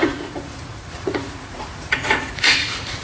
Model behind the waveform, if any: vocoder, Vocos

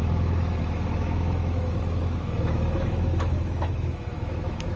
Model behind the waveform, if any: autoencoder, DAC-VAE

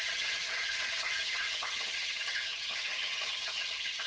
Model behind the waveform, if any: vocoder, HiFi-GAN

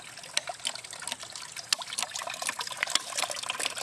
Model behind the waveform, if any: none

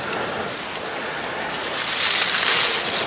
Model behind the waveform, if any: none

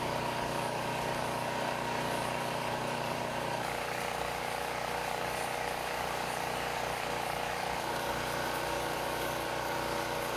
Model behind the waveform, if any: codec, DAC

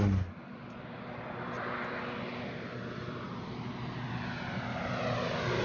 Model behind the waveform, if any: none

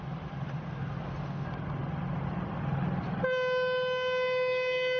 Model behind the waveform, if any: none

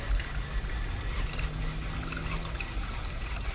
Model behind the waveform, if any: none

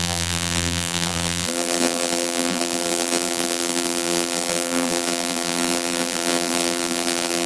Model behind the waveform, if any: vocoder, BigVGAN v2